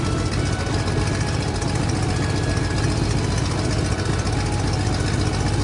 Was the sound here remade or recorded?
recorded